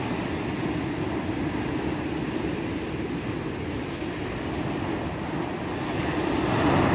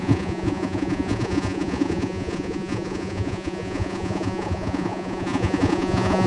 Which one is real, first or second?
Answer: first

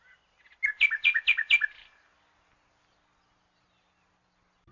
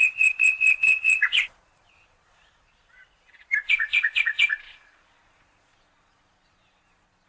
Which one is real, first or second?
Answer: first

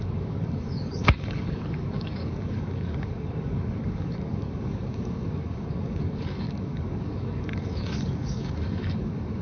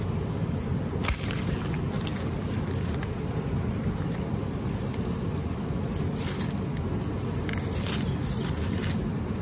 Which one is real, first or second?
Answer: second